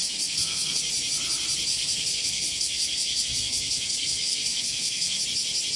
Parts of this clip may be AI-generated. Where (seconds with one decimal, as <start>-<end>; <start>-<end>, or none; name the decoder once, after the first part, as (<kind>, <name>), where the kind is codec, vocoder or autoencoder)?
0.0-0.8 (codec, SNAC); 1.7-5.2